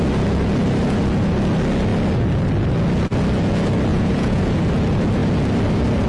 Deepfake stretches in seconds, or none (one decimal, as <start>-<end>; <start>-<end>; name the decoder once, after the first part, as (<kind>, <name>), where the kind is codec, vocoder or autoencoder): 3.9-4.6 (vocoder, Vocos)